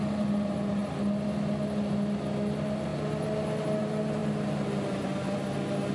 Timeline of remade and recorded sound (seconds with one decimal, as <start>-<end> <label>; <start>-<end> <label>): 0.0-5.9 recorded